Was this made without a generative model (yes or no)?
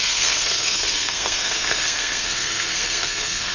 no